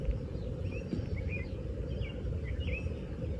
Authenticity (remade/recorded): recorded